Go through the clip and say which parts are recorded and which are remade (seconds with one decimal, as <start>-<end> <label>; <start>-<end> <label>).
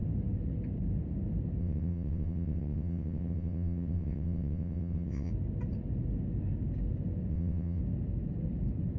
0.0-1.6 recorded; 1.6-5.3 remade; 5.3-7.3 recorded; 7.3-7.8 remade; 7.8-9.0 recorded